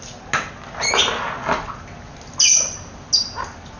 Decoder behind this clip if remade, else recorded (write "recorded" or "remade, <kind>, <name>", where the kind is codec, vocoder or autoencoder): recorded